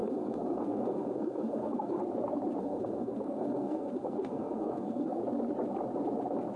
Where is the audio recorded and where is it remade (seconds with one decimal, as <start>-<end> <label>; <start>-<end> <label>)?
0.0-2.0 remade; 2.0-2.6 recorded; 2.6-5.2 remade; 5.2-6.6 recorded

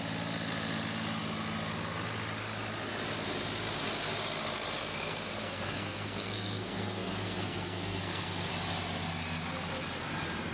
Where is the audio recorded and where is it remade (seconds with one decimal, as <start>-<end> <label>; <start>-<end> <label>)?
0.0-4.8 recorded; 4.8-8.5 remade; 8.5-10.5 recorded

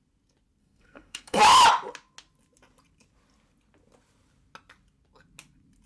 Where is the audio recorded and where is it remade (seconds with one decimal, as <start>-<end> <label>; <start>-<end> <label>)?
0.0-0.6 recorded; 0.6-1.4 remade; 1.4-5.9 recorded

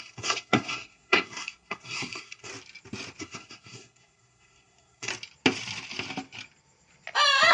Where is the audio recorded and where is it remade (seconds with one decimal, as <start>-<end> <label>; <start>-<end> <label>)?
0.0-2.5 remade; 2.5-3.2 recorded; 3.2-5.1 remade; 5.1-7.5 recorded

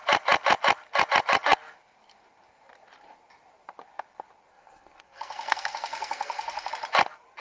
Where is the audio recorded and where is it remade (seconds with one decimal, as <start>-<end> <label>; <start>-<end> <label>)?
0.0-4.5 recorded; 4.5-6.7 remade; 6.7-7.4 recorded

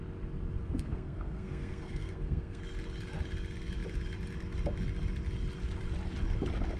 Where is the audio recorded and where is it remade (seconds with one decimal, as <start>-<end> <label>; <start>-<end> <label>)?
0.0-0.6 recorded; 0.6-2.6 remade; 2.6-6.8 recorded